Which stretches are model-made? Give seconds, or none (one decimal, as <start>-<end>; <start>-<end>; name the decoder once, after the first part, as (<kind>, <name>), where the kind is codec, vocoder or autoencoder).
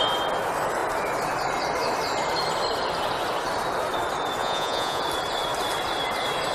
4.4-5.0 (vocoder, Vocos)